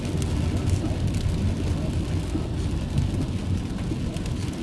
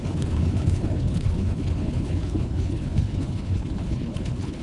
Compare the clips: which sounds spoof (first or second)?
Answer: second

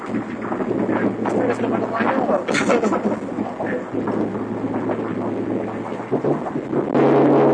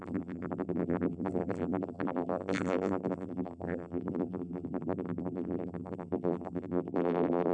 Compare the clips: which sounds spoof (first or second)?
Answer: second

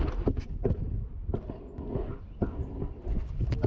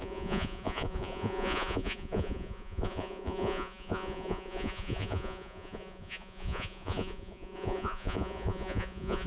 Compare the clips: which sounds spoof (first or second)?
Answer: second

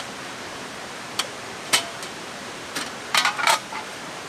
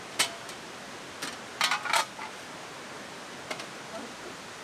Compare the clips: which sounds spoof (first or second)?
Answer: first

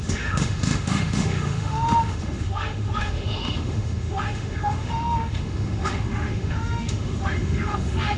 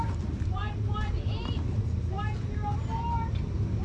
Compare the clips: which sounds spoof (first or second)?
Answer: first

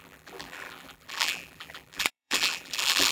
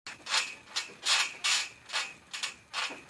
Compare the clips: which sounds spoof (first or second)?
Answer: first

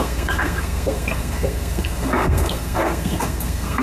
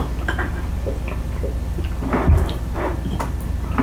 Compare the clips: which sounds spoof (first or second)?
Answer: first